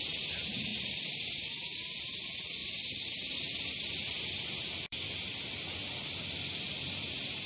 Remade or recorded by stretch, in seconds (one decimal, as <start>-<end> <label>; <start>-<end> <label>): 0.0-0.7 recorded; 0.7-1.5 remade; 1.5-2.6 recorded; 2.6-7.1 remade; 7.1-7.5 recorded